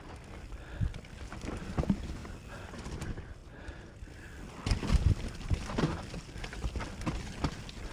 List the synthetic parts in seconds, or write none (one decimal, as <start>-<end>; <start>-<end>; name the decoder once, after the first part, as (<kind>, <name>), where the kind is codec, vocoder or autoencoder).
0.0-3.4 (vocoder, BigVGAN v2); 4.5-7.9

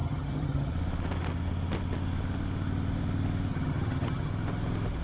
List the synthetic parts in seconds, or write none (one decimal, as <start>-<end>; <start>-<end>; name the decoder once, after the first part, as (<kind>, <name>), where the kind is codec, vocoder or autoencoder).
0.0-0.7 (vocoder, HiFi-GAN); 3.5-4.3

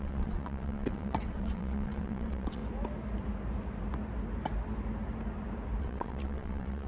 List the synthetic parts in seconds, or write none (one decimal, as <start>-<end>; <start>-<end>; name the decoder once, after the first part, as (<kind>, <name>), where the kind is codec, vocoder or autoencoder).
0.0-2.6 (vocoder, WaveNeXt); 5.8-6.9

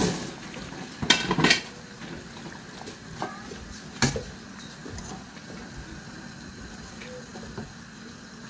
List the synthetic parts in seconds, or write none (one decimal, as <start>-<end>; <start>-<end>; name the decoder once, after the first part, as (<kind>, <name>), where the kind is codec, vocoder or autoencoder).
none

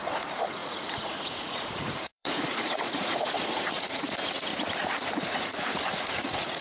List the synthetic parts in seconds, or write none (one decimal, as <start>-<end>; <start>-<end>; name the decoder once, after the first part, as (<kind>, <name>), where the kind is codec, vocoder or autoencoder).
0.0-4.5 (vocoder, Vocos); 5.4-6.6

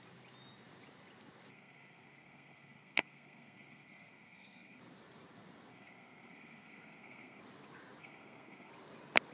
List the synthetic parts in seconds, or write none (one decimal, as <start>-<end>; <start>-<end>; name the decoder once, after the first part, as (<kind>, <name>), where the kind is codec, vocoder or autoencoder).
1.5-4.8 (codec, SNAC); 5.7-7.4; 8.0-8.7